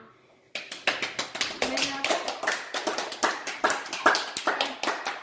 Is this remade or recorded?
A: recorded